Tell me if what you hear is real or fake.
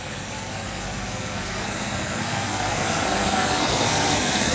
fake